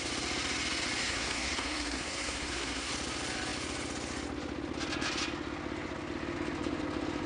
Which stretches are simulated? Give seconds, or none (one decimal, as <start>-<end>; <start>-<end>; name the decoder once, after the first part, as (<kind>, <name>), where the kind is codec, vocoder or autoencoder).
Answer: 1.0-2.9 (codec, SNAC)

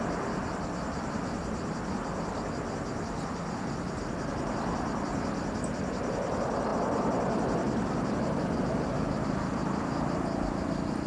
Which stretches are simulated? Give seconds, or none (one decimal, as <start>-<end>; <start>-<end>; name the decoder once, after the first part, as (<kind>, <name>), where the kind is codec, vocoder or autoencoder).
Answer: none

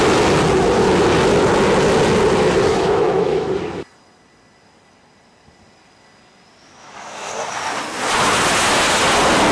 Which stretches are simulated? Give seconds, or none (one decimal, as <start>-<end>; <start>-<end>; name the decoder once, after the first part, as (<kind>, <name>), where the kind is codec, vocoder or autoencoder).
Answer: 2.7-3.5 (autoencoder, DAC-VAE); 6.8-7.3

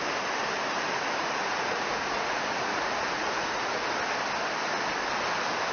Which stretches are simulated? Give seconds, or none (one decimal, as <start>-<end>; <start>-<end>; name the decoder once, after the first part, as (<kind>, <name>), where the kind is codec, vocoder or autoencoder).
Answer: 1.2-3.8 (vocoder, Vocos)

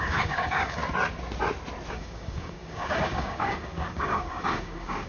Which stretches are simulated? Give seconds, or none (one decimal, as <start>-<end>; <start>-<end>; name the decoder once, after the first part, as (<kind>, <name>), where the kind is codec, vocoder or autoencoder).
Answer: 0.0-0.8 (codec, DAC); 1.9-5.1